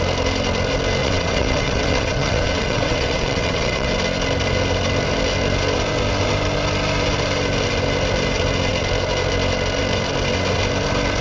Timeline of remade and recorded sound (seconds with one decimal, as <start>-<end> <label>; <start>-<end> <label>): 0.0-1.0 recorded; 1.0-3.9 remade; 3.9-11.2 recorded